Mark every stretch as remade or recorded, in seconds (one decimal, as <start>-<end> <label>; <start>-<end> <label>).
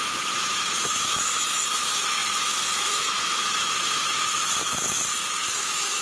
0.0-6.0 remade